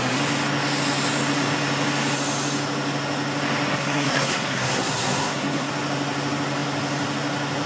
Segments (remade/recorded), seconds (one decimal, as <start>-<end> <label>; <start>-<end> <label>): 0.0-3.7 recorded; 3.7-5.7 remade; 5.7-7.7 recorded